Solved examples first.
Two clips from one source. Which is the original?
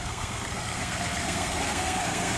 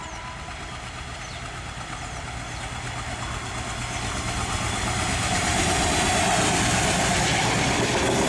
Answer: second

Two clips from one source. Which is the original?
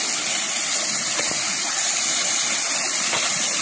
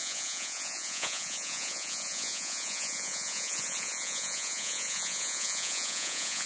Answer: first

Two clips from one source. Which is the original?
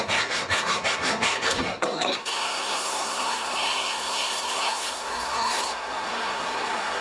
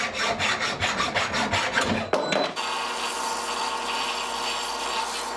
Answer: second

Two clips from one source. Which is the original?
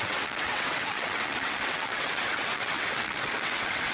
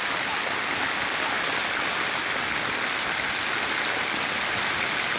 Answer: second